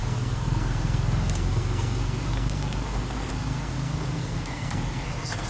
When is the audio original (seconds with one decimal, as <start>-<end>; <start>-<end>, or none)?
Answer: none